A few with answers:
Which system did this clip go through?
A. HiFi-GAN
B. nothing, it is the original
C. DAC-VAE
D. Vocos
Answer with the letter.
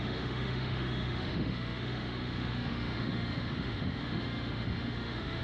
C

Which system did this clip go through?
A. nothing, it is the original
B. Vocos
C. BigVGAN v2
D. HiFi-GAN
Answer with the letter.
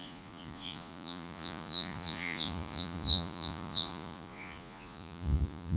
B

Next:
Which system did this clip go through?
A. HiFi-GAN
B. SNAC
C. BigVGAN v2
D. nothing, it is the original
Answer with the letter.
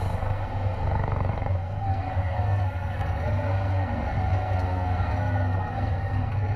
B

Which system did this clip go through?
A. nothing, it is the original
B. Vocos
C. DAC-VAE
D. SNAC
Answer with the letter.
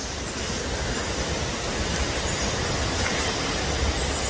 A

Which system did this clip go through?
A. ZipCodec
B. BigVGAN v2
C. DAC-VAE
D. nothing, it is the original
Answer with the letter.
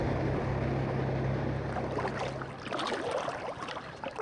D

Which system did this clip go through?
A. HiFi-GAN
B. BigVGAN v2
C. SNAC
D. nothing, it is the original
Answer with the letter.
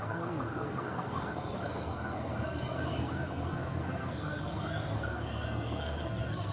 C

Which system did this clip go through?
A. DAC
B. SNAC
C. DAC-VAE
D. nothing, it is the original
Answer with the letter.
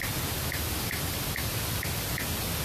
D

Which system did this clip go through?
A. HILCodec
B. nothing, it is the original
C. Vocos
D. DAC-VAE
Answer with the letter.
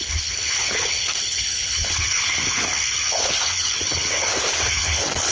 A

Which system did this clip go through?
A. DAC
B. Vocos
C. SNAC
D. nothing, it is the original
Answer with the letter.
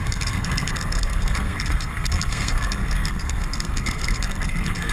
C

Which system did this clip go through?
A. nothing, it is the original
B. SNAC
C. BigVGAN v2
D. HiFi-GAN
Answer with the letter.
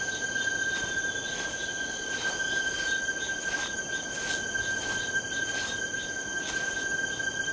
A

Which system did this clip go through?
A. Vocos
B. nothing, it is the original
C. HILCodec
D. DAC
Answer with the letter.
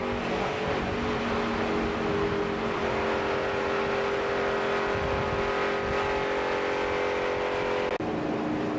B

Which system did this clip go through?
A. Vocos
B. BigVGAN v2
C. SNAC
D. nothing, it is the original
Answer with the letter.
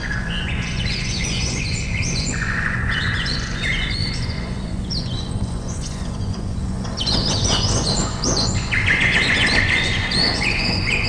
A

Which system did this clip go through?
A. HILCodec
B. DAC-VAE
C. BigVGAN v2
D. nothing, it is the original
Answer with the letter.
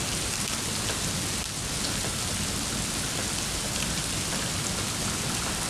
D